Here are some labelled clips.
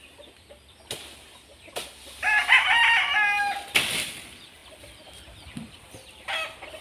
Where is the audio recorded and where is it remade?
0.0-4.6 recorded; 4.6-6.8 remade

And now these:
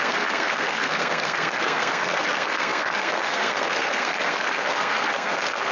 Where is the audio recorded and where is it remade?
0.0-5.7 remade